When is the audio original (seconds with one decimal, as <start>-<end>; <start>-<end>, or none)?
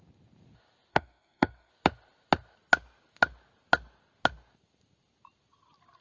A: 0.0-0.9; 1.7-6.0